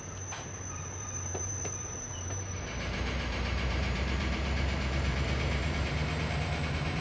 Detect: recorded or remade remade